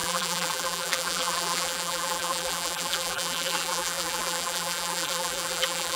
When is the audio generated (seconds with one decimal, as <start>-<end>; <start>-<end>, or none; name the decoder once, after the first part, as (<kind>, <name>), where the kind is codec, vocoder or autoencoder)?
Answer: 0.0-6.0 (vocoder, BigVGAN v2)